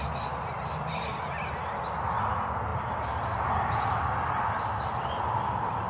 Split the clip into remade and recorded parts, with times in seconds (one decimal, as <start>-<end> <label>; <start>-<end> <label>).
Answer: 0.0-5.9 recorded